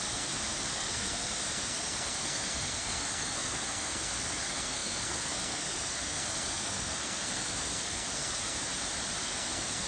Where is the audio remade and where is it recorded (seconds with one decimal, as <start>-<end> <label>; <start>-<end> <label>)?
0.0-8.7 remade; 8.7-9.2 recorded; 9.2-9.9 remade